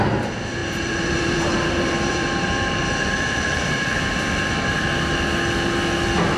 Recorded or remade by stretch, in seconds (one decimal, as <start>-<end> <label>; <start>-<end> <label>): 0.0-0.6 recorded; 0.6-4.1 remade; 4.1-6.4 recorded